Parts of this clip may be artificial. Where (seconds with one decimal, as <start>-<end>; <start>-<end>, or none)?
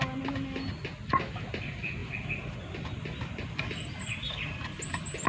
none